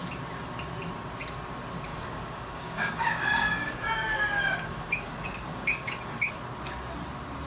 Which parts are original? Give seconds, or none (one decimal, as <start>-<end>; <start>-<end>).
0.0-1.9; 6.3-7.5